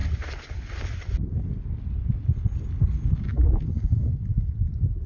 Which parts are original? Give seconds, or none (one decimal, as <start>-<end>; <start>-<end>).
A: 0.0-5.1